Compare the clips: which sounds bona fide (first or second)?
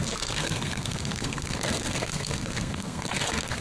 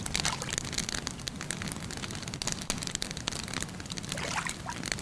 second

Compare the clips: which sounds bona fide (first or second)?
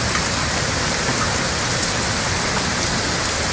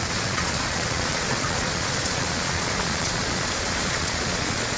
first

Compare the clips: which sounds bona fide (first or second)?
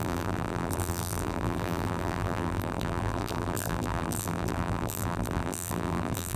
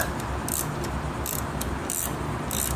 second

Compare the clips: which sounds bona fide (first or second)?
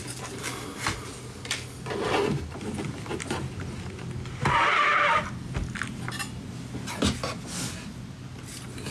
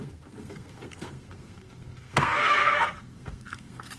first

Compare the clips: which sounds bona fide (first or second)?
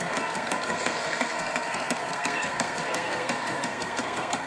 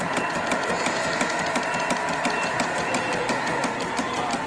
second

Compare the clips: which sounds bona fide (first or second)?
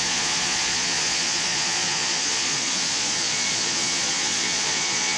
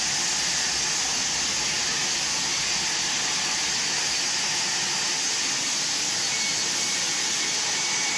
second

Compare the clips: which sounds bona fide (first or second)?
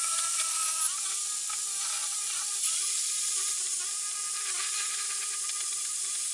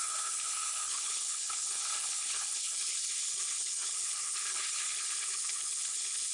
first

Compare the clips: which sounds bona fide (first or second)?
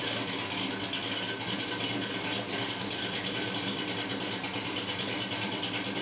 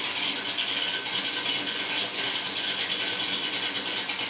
first